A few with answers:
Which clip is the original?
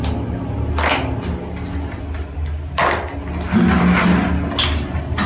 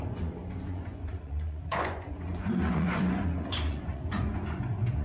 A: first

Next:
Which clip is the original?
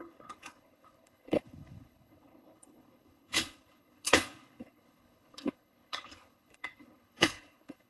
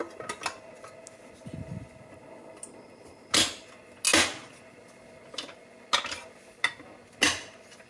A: second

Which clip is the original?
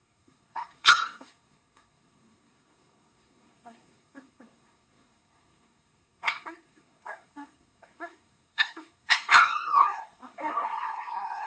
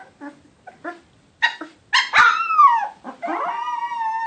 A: second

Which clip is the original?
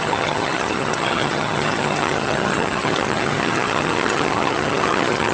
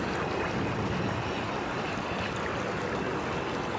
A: second